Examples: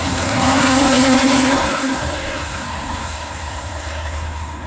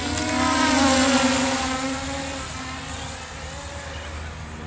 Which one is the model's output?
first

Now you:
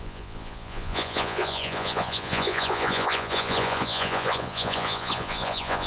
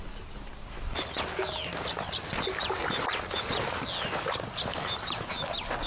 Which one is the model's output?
first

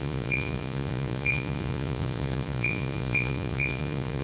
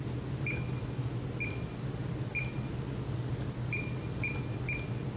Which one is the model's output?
first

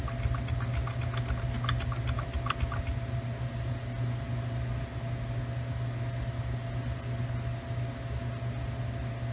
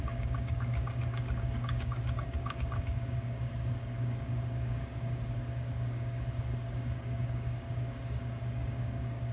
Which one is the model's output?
second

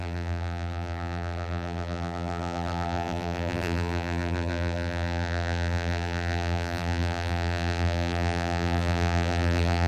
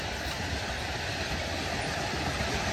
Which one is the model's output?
first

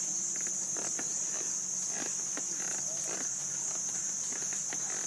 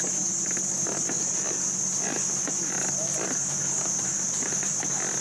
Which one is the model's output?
first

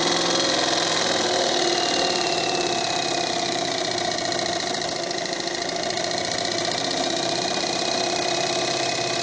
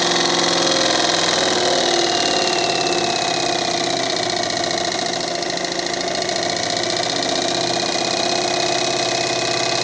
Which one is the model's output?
first